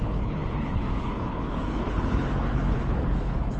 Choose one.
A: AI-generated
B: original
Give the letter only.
A